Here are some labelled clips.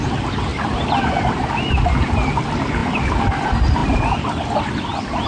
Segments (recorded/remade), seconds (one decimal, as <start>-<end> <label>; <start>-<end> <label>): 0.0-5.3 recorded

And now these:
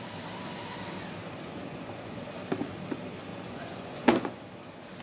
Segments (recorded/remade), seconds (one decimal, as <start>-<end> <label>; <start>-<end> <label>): 0.0-1.2 recorded; 1.2-2.2 remade; 2.2-3.3 recorded; 3.3-4.4 remade; 4.4-5.0 recorded

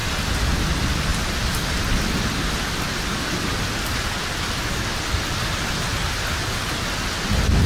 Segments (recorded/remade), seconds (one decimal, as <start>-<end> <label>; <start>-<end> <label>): 0.0-7.7 recorded